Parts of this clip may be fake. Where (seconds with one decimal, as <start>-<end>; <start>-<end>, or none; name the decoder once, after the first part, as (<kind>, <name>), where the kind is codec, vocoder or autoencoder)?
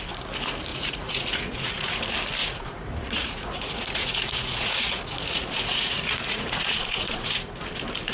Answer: 0.7-2.0 (vocoder, Vocos); 2.4-7.3